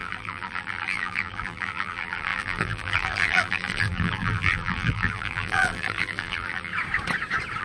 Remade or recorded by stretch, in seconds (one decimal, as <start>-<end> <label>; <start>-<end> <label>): 0.0-6.7 remade; 6.7-7.6 recorded